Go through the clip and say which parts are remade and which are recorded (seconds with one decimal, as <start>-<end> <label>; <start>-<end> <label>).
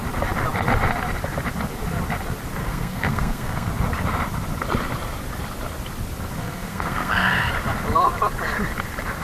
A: 0.0-2.6 recorded; 2.6-3.7 remade; 3.7-6.4 recorded; 6.4-7.5 remade; 7.5-9.2 recorded